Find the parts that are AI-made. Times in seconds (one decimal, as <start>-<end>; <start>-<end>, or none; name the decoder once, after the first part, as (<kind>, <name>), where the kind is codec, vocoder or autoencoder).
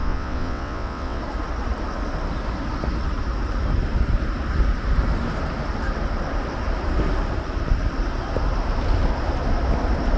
0.0-1.2 (vocoder, WaveNeXt)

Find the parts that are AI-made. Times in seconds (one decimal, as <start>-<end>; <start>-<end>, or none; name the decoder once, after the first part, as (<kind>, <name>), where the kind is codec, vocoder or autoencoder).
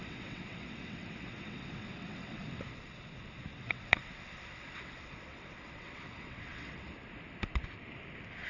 0.0-2.4 (vocoder, WaveNeXt); 3.5-6.9